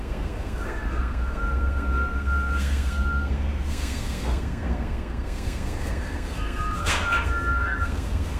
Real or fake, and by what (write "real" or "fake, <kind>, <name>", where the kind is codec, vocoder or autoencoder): fake, codec, SNAC